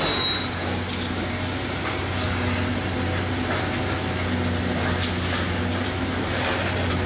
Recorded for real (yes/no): yes